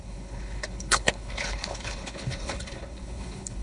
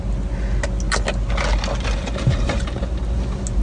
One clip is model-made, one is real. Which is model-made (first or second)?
first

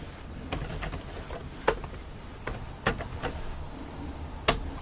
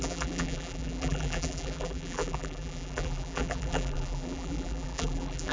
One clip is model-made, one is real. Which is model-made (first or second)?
second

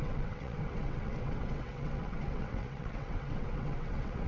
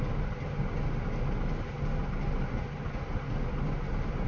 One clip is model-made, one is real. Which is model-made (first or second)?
first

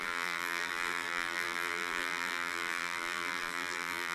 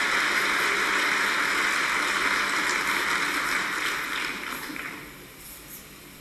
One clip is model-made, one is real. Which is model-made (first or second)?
first